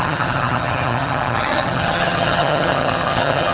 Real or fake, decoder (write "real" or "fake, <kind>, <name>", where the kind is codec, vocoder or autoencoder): fake, vocoder, HiFi-GAN